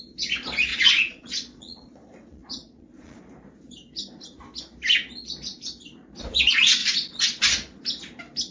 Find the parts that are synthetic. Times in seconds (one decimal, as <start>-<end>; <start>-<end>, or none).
0.7-3.2